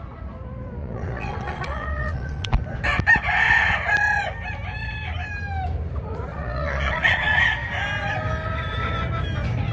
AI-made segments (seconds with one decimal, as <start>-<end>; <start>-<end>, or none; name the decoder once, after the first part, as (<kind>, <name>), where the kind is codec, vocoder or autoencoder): 0.8-2.6 (vocoder, Vocos); 6.3-7.4